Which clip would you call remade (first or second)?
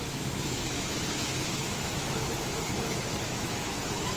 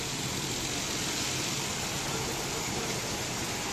first